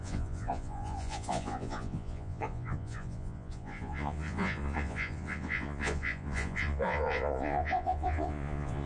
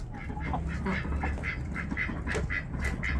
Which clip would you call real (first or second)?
second